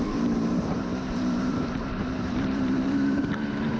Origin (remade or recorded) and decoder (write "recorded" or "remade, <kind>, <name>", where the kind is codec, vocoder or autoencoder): remade, vocoder, BigVGAN v2